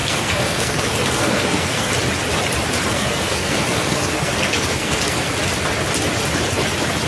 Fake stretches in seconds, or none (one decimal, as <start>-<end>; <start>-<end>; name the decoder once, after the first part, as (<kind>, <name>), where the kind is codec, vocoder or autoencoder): 0.0-1.9 (codec, SNAC); 2.9-5.3